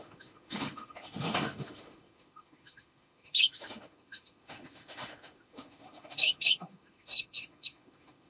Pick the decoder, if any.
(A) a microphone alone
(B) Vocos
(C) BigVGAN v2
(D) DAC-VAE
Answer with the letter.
D